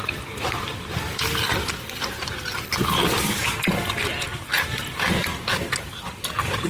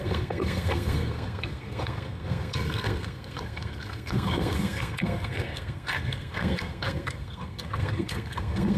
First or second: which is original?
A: first